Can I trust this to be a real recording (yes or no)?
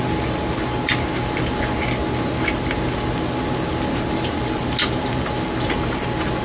yes